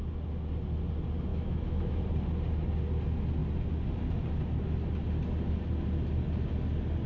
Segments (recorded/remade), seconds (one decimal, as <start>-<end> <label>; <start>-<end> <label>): 0.0-1.3 recorded; 1.3-2.0 remade; 2.0-7.1 recorded